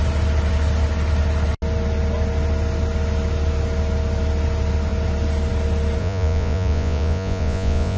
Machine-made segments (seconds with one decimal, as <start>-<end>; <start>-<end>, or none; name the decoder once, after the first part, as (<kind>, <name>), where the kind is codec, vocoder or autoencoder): 6.0-8.0 (vocoder, Vocos)